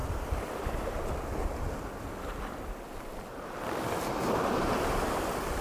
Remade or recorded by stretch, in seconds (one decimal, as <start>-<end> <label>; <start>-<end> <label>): 0.0-1.0 remade; 1.0-4.2 recorded; 4.2-4.9 remade; 4.9-5.6 recorded